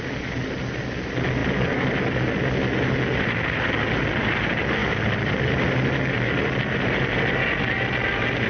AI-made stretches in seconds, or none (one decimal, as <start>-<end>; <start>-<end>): none